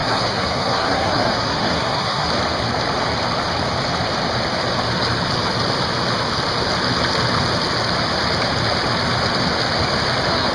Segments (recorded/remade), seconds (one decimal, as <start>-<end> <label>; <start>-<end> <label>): 0.0-2.3 remade; 2.3-10.5 recorded